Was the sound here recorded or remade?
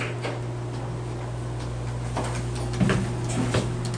recorded